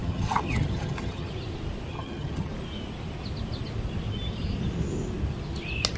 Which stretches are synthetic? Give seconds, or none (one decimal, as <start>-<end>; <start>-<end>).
0.0-1.3; 1.9-2.5